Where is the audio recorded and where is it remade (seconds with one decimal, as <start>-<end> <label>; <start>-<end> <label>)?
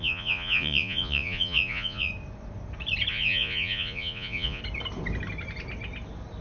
0.0-2.1 remade; 2.1-3.1 recorded; 3.1-4.6 remade; 4.6-6.4 recorded